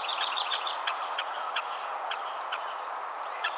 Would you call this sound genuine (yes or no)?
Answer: no